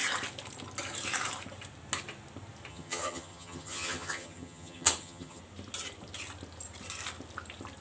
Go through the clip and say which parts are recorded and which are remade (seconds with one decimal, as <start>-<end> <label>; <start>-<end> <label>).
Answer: 0.0-2.7 recorded; 2.7-5.4 remade; 5.4-7.8 recorded